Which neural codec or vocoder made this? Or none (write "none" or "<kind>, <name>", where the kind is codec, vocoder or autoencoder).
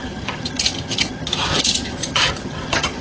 vocoder, HiFi-GAN